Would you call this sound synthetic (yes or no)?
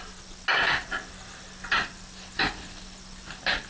no